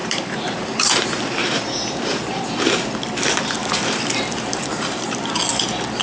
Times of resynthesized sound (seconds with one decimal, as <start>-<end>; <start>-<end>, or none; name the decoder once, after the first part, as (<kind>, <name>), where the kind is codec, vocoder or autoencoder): 0.0-2.7 (vocoder, BigVGAN v2); 3.6-5.4